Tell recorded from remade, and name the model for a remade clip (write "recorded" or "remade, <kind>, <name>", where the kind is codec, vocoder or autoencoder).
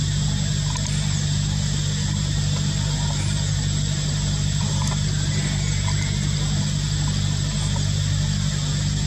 recorded